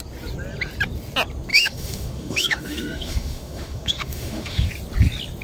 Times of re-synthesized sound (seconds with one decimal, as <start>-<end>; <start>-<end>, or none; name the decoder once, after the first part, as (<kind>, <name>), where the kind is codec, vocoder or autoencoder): 1.5-4.7 (autoencoder, DAC-VAE)